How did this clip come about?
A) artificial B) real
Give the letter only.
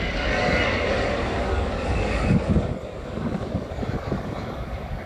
A